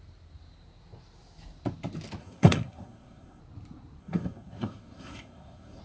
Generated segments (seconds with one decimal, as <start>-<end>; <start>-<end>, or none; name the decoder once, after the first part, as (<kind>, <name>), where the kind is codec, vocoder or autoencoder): 2.2-3.4 (codec, SNAC); 4.0-5.8